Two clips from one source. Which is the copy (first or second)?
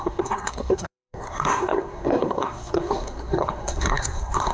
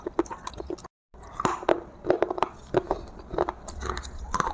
first